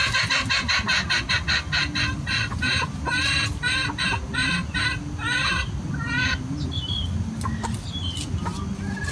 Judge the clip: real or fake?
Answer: real